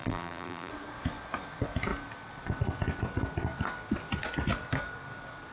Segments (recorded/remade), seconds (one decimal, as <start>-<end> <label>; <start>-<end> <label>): 0.0-0.7 remade; 0.7-5.5 recorded